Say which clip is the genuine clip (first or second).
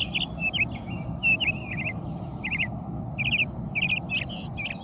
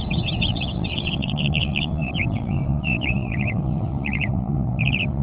first